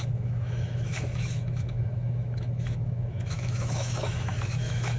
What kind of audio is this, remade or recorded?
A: remade